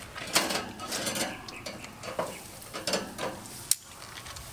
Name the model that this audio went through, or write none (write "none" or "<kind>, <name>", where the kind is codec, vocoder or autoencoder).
none